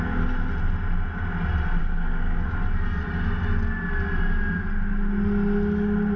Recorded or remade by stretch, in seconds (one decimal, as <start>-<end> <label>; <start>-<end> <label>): 0.0-1.8 recorded; 1.8-2.6 remade; 2.6-6.2 recorded